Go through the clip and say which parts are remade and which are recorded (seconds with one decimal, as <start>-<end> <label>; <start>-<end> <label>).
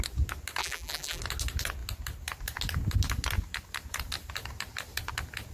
0.0-0.6 recorded; 0.6-1.2 remade; 1.2-5.5 recorded